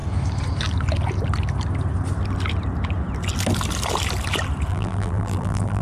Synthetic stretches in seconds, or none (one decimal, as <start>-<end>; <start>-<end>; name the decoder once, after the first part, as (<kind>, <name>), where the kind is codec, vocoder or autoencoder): 4.7-5.8 (vocoder, BigVGAN v2)